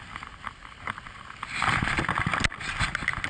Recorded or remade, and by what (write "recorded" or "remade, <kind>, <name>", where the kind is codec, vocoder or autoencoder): recorded